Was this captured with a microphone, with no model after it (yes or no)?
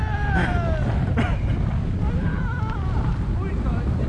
yes